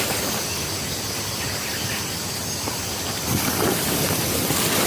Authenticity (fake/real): real